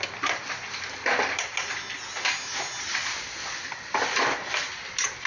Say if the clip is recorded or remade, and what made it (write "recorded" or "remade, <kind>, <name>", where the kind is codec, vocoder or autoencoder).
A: recorded